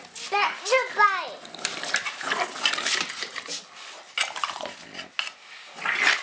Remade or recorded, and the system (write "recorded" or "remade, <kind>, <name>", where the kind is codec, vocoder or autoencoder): recorded